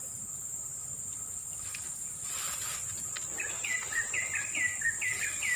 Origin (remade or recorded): recorded